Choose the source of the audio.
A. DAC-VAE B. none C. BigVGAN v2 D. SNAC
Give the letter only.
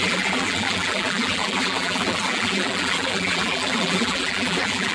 C